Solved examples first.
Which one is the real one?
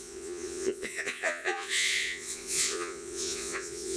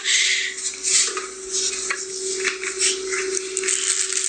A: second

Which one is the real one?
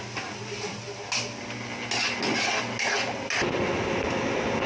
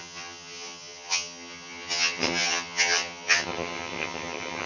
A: first